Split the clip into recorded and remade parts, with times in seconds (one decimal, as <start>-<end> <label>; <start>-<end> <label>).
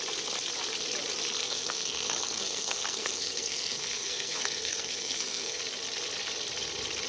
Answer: 0.0-1.4 recorded; 1.4-5.6 remade; 5.6-7.1 recorded